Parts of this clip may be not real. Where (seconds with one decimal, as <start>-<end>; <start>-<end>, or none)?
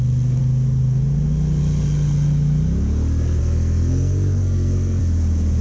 3.4-5.0